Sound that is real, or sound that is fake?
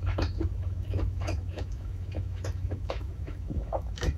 fake